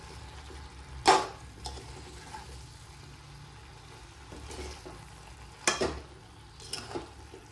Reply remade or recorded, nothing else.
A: recorded